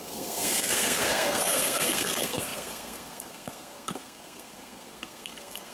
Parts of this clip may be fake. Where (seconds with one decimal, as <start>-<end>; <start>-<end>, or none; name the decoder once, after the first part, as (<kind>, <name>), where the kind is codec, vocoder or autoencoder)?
0.0-5.7 (codec, SNAC)

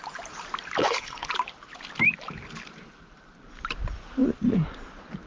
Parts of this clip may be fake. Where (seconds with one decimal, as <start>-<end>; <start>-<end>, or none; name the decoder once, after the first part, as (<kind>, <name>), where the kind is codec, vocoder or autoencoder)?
0.8-1.3 (codec, HILCodec)

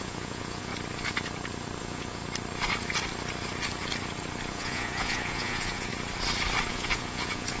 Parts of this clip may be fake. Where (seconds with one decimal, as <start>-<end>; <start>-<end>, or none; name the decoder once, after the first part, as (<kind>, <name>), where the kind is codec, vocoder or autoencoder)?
0.0-0.7 (vocoder, Vocos); 1.8-2.2; 4.5-5.9; 6.7-7.6

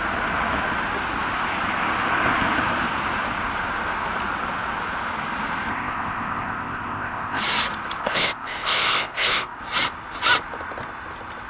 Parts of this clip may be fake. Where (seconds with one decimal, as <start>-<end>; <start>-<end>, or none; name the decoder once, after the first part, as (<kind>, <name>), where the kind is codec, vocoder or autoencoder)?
5.7-7.4 (codec, ZipCodec); 8.0-9.6

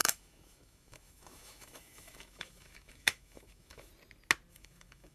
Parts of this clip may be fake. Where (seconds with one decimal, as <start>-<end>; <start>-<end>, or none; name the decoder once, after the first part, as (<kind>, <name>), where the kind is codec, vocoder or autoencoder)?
0.0-3.9 (autoencoder, DAC-VAE); 4.5-5.1

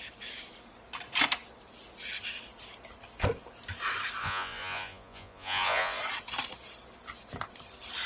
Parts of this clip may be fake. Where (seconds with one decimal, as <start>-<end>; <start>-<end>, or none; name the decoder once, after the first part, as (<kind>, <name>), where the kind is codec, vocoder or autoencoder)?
4.2-6.0 (vocoder, Vocos)

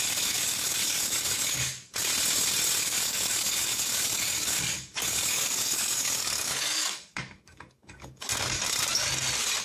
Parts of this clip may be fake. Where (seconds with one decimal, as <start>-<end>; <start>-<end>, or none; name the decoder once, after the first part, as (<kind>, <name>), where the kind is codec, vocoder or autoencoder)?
0.0-2.1 (codec, DAC); 2.8-8.3